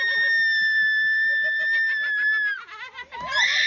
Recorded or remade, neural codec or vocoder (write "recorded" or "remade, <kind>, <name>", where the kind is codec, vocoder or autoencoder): recorded